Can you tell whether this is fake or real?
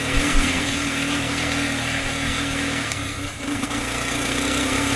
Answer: fake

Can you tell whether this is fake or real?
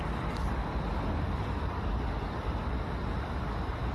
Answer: real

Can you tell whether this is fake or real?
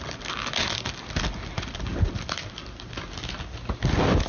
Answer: real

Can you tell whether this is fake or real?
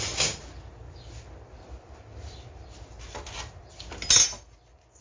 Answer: real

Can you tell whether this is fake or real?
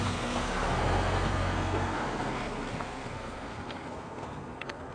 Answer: fake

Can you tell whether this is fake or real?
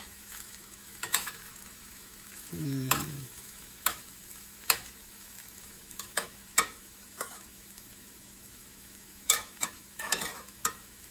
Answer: fake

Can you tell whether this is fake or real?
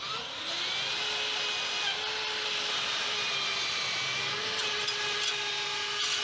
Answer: real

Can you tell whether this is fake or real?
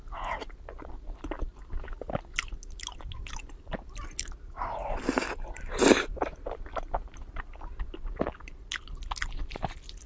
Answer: real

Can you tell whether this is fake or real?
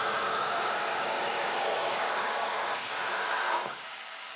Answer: fake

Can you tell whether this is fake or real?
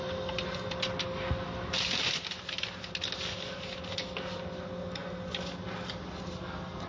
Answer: real